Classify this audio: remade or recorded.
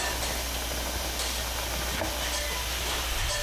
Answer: recorded